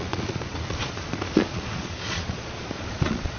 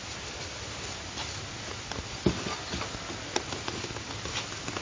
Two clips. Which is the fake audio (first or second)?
first